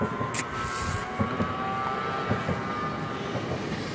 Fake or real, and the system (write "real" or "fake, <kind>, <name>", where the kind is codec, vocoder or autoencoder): real